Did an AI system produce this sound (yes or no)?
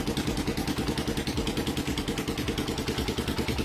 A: no